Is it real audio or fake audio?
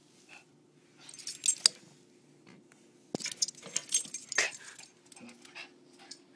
real